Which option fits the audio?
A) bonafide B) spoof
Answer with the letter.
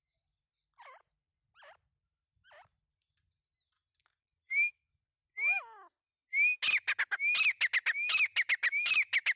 A